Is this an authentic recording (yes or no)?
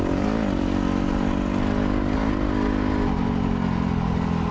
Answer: yes